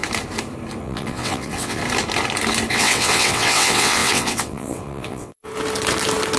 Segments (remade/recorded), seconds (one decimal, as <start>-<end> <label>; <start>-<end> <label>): 0.0-0.8 recorded; 0.8-1.8 remade; 1.8-2.7 recorded; 2.7-5.5 remade; 5.5-6.4 recorded